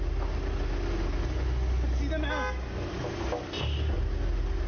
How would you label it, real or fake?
real